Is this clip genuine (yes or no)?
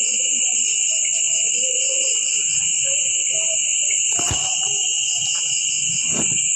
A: yes